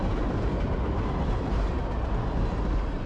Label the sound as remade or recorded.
recorded